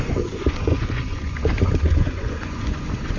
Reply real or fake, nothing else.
fake